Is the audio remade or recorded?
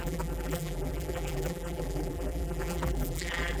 remade